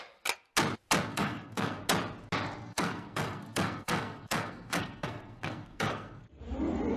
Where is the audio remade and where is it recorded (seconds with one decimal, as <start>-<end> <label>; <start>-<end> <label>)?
0.0-1.1 recorded; 1.1-1.8 remade; 1.8-2.6 recorded; 2.6-6.4 remade; 6.4-7.0 recorded